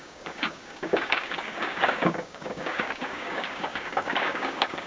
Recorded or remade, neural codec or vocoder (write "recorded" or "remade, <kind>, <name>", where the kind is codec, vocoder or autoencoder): remade, codec, DAC